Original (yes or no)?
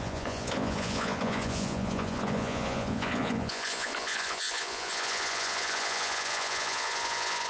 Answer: no